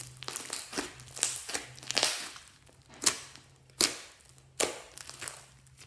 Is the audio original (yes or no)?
yes